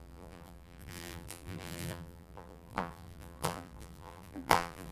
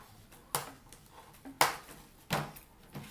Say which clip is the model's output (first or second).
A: first